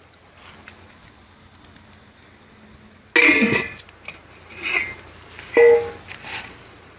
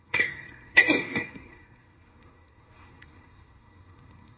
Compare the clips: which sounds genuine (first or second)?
first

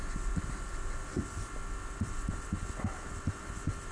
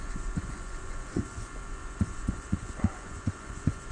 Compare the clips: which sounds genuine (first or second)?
first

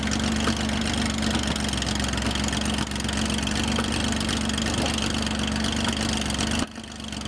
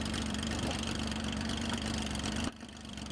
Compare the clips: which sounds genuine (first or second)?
first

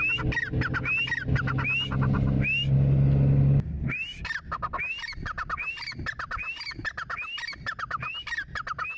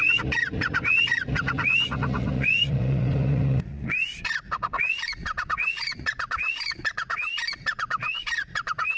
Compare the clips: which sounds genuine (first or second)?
first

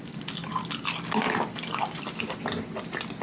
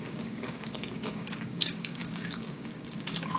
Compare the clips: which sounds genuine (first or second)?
first